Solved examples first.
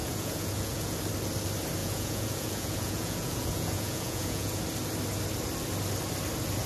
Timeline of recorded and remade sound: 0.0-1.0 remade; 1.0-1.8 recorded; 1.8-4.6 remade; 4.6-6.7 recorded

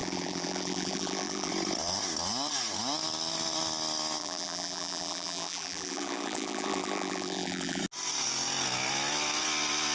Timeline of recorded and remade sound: 0.0-1.5 remade; 1.5-4.2 recorded; 4.2-7.8 remade; 7.8-9.9 recorded

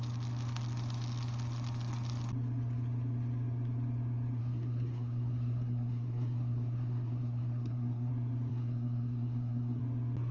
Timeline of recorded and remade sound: 0.0-4.4 recorded; 4.4-8.1 remade; 8.1-8.5 recorded; 8.5-9.8 remade; 9.8-10.3 recorded

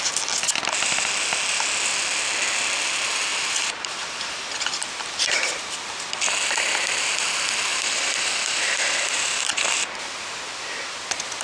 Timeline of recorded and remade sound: 0.0-3.3 recorded; 3.3-5.6 remade; 5.6-7.7 recorded; 7.7-9.9 remade; 9.9-11.4 recorded

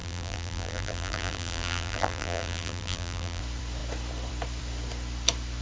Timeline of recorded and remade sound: 0.0-3.4 remade; 3.4-5.6 recorded

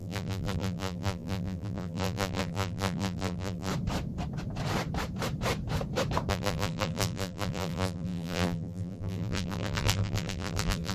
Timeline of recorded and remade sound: 0.0-3.7 remade; 3.7-6.3 recorded; 6.3-10.9 remade

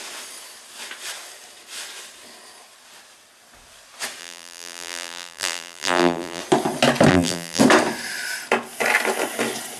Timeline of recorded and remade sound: 0.0-4.2 recorded; 4.2-6.4 remade; 6.4-7.1 recorded; 7.1-7.6 remade; 7.6-9.8 recorded

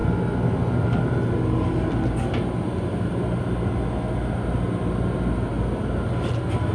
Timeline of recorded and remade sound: 0.0-6.7 recorded